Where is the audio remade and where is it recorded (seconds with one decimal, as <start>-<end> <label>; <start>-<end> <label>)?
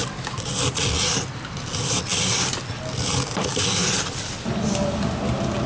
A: 0.0-5.7 recorded